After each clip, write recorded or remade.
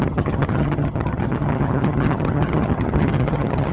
remade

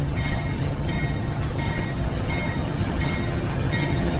remade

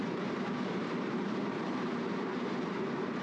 remade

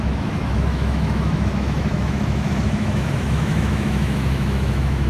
remade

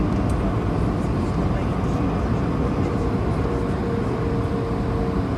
recorded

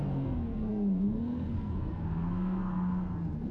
remade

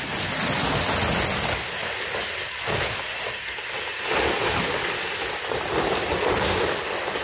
recorded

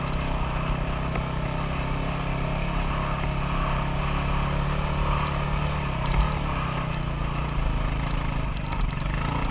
recorded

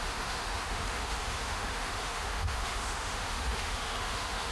remade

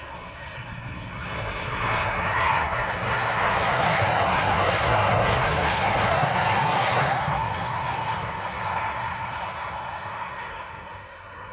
remade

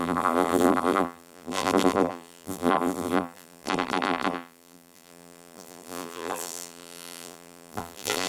remade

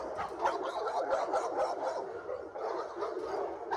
recorded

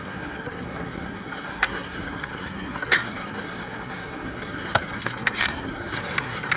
remade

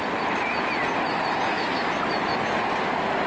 recorded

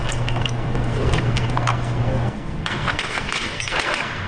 remade